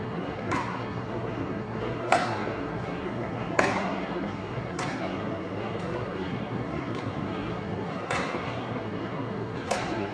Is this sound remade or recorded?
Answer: remade